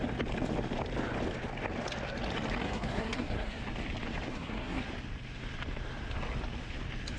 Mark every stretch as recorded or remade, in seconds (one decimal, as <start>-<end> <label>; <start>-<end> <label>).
0.0-2.6 recorded; 2.6-3.6 remade; 3.6-4.3 recorded; 4.3-4.8 remade; 4.8-7.2 recorded